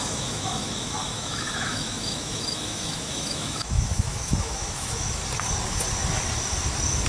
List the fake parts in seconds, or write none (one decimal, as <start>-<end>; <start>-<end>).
0.0-5.2